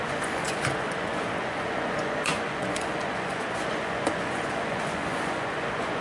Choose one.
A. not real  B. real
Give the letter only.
A